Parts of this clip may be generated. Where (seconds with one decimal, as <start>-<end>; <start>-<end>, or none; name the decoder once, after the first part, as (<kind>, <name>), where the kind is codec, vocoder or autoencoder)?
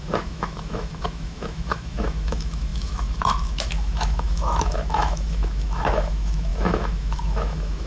0.0-7.9 (autoencoder, DAC-VAE)